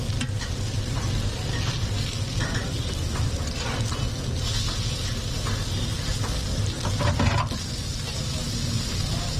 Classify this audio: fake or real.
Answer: real